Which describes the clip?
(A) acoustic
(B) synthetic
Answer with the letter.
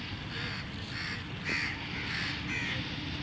A